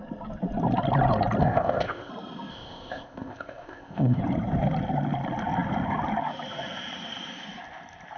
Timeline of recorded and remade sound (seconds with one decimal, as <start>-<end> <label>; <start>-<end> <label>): 0.0-1.4 recorded; 1.4-2.1 remade; 2.1-2.5 recorded; 2.5-4.2 remade; 4.2-8.2 recorded